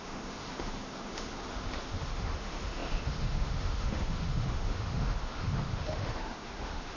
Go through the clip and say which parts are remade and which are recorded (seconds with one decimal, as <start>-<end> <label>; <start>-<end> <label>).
0.0-7.0 remade